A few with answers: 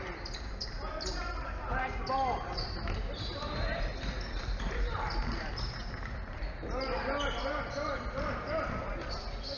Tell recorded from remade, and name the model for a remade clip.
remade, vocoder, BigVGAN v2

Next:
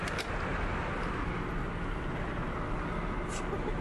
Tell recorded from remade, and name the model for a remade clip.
recorded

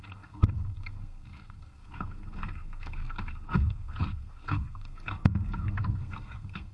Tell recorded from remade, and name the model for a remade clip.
remade, codec, SNAC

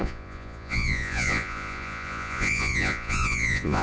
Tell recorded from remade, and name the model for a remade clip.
remade, vocoder, Vocos